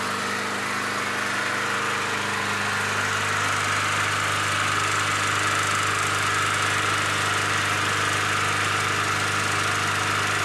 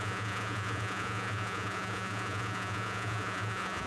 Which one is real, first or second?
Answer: first